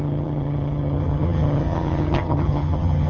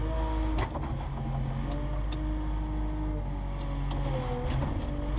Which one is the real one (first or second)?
second